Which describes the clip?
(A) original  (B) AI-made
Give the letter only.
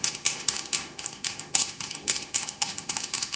B